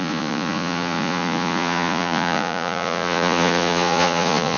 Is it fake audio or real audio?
fake